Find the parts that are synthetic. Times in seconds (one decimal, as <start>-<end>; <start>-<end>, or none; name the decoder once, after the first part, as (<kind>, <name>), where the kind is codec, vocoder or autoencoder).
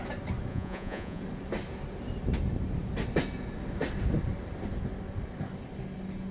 0.5-1.2 (vocoder, Vocos)